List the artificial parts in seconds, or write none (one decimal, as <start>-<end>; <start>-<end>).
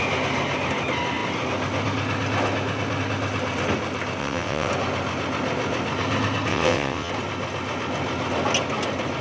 4.2-4.7; 6.5-7.1